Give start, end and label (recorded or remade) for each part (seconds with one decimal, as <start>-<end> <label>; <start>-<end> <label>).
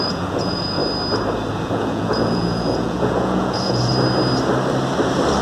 0.0-0.8 remade; 0.8-1.5 recorded; 1.5-3.9 remade; 3.9-5.4 recorded